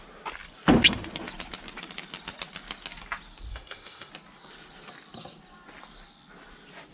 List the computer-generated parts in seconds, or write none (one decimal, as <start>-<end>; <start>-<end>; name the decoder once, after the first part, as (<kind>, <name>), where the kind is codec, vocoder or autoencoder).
3.5-4.1 (autoencoder, DAC-VAE)